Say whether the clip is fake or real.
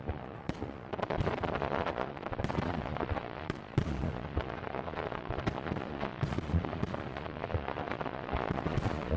fake